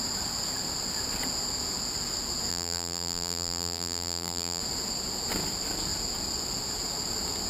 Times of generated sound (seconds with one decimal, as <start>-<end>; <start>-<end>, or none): 2.5-4.6